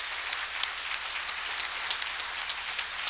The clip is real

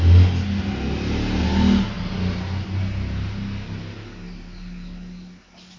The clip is real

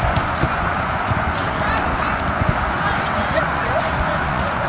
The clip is fake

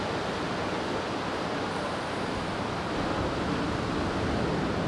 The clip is real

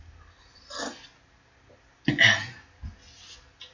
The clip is real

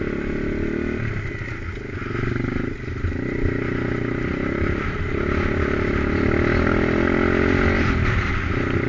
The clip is real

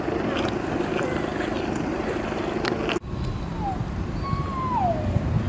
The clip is real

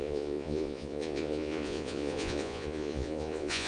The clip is fake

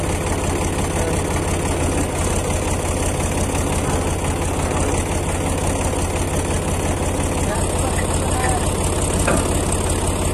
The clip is real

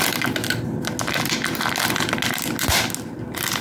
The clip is real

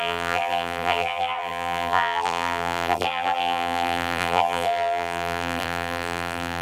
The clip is fake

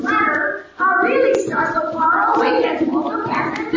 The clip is real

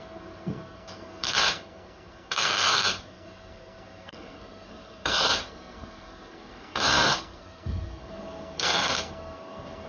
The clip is fake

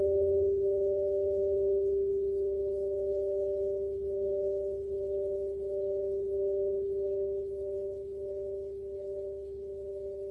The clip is fake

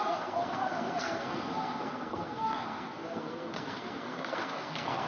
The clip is fake